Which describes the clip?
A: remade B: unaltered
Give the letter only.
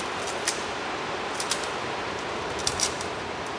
A